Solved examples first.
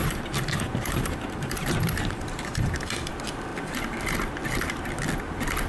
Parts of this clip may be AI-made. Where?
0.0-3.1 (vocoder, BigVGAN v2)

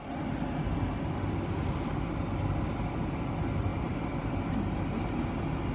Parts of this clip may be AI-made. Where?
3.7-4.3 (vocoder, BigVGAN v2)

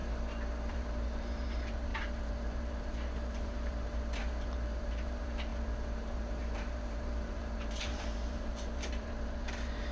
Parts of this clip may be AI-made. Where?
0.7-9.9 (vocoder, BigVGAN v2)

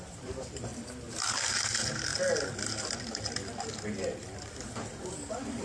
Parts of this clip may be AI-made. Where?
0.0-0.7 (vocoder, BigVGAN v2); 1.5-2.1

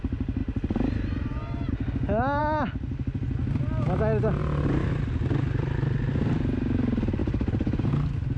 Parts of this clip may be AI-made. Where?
7.2-7.9 (vocoder, BigVGAN v2)